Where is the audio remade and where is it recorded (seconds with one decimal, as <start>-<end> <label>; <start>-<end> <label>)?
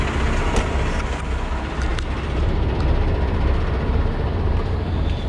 0.0-5.3 recorded